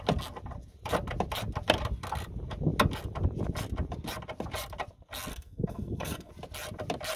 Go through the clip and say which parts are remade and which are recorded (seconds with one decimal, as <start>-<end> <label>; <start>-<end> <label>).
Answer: 0.0-5.3 recorded; 5.3-6.3 remade; 6.3-7.2 recorded